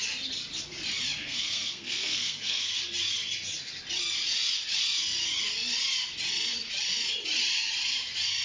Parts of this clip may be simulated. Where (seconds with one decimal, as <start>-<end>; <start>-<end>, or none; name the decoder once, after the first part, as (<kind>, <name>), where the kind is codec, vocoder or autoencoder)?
1.2-2.7 (codec, SNAC)